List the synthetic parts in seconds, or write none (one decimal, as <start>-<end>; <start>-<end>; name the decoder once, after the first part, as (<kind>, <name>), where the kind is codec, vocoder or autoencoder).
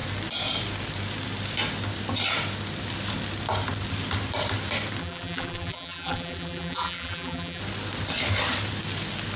5.0-7.6 (vocoder, BigVGAN v2)